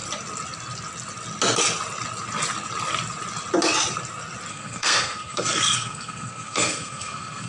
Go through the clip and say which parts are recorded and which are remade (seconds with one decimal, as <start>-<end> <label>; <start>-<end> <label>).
0.0-4.5 recorded; 4.5-7.5 remade